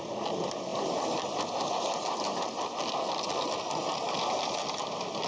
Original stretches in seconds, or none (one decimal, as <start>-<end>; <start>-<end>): 0.0-5.3